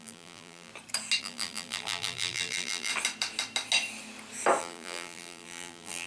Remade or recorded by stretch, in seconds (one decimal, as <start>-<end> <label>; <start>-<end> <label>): 0.0-0.7 remade; 0.7-1.2 recorded; 1.2-2.9 remade; 2.9-4.6 recorded; 4.6-6.1 remade